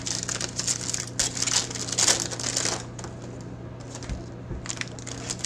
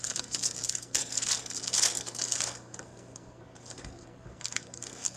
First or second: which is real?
first